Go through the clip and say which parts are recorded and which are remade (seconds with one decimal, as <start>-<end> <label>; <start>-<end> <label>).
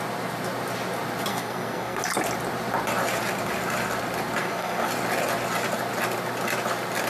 0.0-1.3 recorded; 1.3-2.0 remade; 2.0-4.4 recorded; 4.4-4.9 remade; 4.9-7.1 recorded